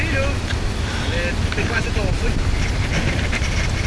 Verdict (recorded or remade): recorded